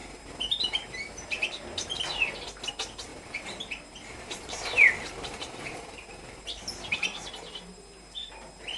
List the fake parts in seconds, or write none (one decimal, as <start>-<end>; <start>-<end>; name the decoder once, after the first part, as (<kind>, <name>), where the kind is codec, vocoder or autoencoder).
3.1-8.3 (vocoder, BigVGAN v2)